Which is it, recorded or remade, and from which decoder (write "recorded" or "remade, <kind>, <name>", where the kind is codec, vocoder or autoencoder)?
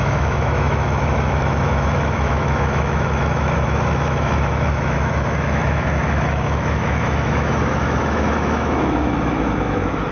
remade, autoencoder, DAC-VAE